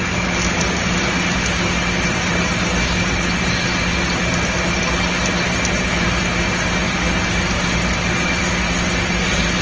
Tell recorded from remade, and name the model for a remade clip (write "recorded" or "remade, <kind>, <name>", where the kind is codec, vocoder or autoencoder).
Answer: recorded